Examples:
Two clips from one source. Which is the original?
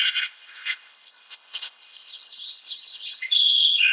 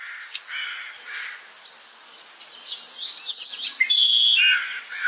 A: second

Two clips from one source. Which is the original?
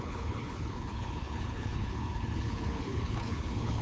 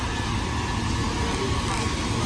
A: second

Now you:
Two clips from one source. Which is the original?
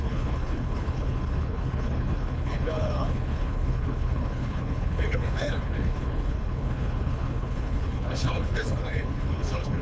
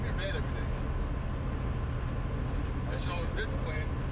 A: second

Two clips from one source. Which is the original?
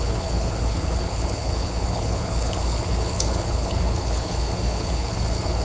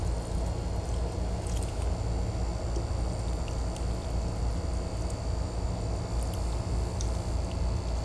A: second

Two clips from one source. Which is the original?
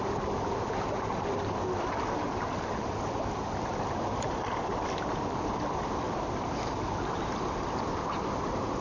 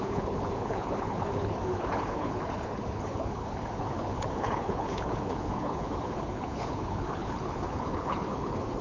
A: first